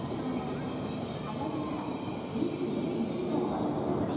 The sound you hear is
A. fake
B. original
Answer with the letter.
B